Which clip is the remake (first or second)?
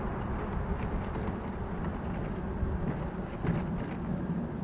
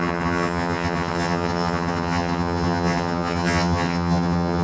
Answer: second